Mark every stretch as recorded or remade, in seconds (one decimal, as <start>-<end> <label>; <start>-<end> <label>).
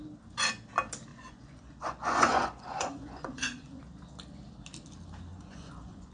0.0-1.1 recorded; 1.1-3.8 remade; 3.8-5.3 recorded; 5.3-6.1 remade